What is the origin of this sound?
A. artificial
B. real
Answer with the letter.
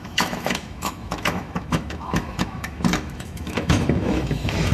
A